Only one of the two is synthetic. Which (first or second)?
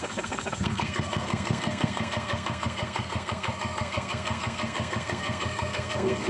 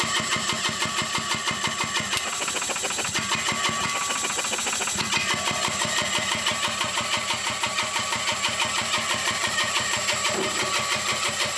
first